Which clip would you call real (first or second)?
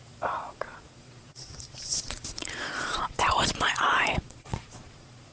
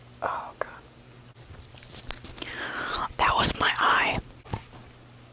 second